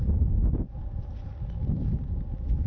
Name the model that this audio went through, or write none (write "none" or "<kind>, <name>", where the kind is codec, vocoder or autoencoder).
none